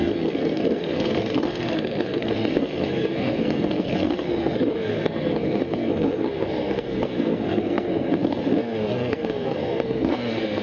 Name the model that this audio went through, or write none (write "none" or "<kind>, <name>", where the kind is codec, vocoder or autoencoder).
codec, SNAC